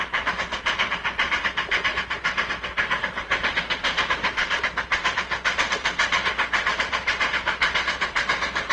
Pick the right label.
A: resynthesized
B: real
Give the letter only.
A